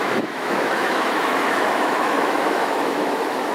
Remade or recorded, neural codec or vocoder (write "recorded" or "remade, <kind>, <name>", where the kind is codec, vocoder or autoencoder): remade, autoencoder, DAC-VAE